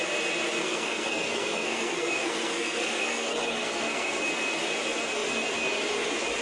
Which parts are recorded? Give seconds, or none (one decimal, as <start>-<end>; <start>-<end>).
0.0-0.6; 4.2-6.4